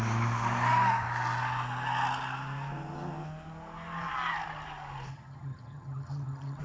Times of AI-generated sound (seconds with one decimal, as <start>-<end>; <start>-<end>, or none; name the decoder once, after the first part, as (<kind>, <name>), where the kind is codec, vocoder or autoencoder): 5.1-6.6 (vocoder, HiFi-GAN)